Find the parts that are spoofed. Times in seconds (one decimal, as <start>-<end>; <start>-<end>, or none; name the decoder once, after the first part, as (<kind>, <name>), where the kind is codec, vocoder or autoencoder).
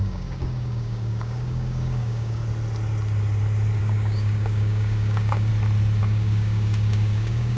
0.0-2.4 (codec, DAC); 3.8-5.5; 6.0-7.6